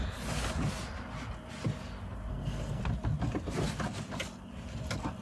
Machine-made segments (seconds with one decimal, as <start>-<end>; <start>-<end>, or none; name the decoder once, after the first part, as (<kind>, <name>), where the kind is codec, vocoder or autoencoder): 2.3-2.8 (codec, SNAC)